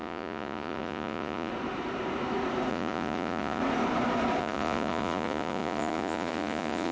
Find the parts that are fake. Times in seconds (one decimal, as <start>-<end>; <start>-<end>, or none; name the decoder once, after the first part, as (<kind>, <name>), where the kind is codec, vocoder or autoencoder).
0.0-1.5 (vocoder, Vocos); 2.7-3.6; 4.4-6.9